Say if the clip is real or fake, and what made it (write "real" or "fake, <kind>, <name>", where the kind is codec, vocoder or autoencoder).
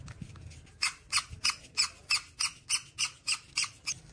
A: real